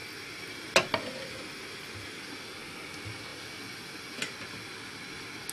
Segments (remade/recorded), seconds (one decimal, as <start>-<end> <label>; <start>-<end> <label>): 0.0-5.5 recorded